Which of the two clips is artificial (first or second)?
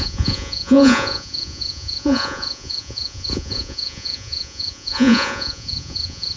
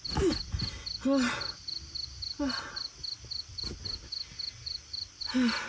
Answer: first